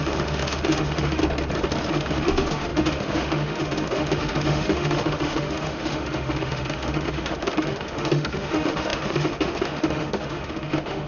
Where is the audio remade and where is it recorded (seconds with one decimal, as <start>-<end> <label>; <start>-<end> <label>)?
0.0-1.2 remade; 1.2-1.9 recorded; 1.9-11.1 remade